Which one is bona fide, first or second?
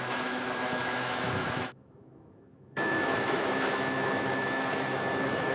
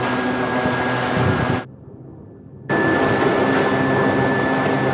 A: second